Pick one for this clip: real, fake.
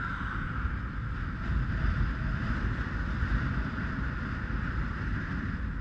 real